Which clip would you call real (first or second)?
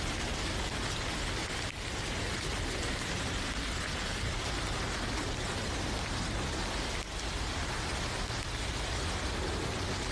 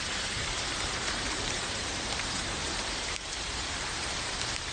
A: first